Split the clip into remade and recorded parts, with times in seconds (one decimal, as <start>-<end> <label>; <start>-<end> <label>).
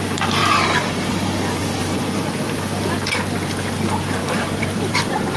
0.0-0.4 recorded; 0.4-1.1 remade; 1.1-1.6 recorded; 1.6-2.9 remade; 2.9-4.2 recorded; 4.2-5.4 remade